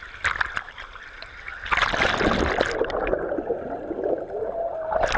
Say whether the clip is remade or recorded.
recorded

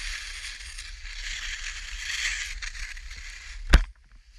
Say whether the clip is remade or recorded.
recorded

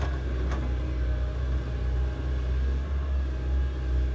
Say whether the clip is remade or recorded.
recorded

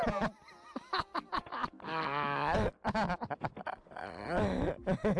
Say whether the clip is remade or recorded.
recorded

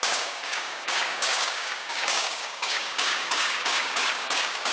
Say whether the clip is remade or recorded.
remade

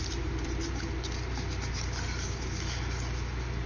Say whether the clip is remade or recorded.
recorded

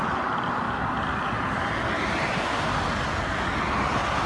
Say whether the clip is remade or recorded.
recorded